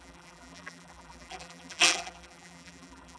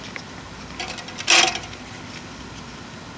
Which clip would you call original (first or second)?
second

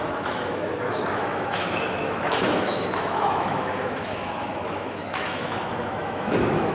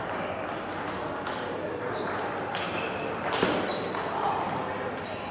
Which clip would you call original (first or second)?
second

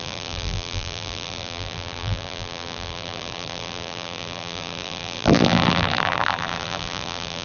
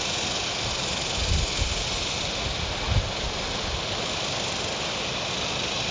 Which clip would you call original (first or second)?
second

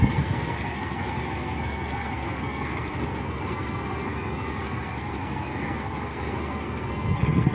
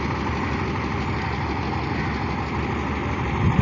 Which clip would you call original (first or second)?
second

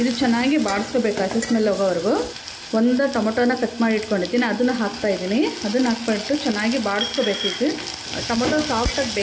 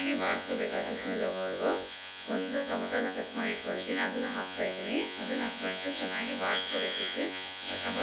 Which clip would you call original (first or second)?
first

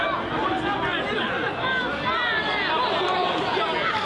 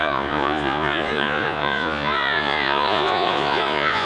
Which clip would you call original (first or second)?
first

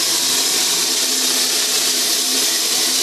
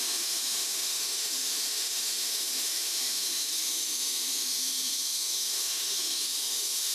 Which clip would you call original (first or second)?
first